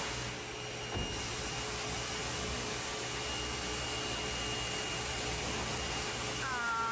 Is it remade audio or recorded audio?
recorded